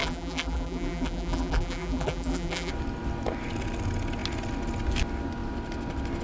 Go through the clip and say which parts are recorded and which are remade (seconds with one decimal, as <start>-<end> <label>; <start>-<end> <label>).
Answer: 0.0-2.7 remade; 2.7-6.2 recorded